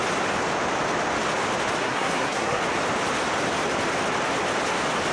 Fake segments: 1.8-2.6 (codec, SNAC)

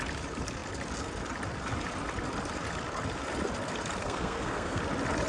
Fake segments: 4.0-4.8 (codec, SNAC)

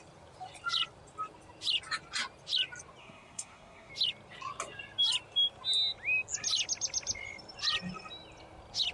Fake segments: 3.0-3.9 (codec, SNAC)

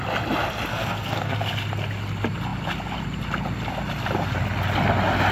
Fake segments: 0.7-1.5 (codec, SNAC)